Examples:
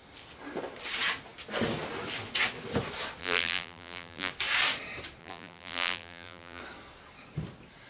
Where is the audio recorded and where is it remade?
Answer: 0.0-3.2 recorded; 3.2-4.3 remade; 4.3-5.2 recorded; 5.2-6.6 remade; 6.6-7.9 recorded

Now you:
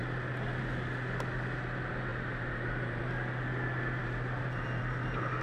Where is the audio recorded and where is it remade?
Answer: 0.0-2.1 recorded; 2.1-3.0 remade; 3.0-4.0 recorded; 4.0-4.8 remade; 4.8-5.4 recorded

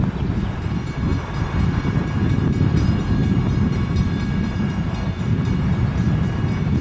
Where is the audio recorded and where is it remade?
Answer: 0.0-6.8 recorded

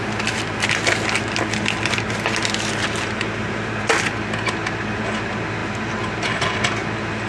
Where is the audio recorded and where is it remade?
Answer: 0.0-7.3 recorded